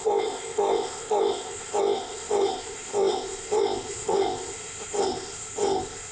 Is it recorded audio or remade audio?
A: remade